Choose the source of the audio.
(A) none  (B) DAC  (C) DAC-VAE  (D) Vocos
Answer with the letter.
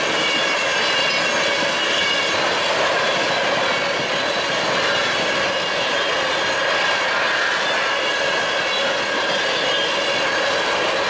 A